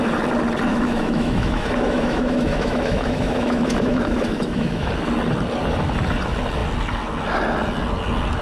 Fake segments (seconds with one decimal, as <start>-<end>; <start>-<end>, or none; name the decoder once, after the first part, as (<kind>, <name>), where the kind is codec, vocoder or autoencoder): 0.7-4.9 (autoencoder, DAC-VAE)

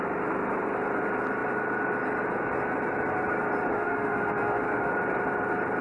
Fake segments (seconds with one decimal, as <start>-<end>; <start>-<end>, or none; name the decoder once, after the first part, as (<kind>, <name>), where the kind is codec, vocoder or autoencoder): 3.7-4.9 (autoencoder, DAC-VAE)

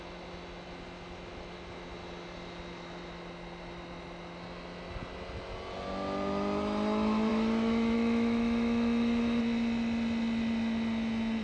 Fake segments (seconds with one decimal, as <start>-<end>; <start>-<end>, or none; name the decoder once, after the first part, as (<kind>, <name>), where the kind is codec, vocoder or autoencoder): 7.3-9.4 (autoencoder, DAC-VAE)

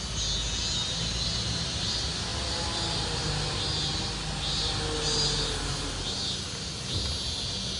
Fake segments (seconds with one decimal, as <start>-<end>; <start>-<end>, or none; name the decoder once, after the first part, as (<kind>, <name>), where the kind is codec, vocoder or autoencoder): none